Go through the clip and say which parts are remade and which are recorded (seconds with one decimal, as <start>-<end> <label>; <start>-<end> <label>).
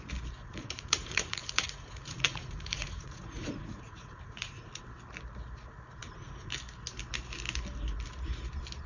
0.0-0.4 recorded; 0.4-4.8 remade; 4.8-6.0 recorded; 6.0-6.5 remade; 6.5-8.9 recorded